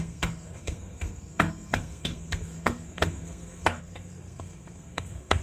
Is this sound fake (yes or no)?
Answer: yes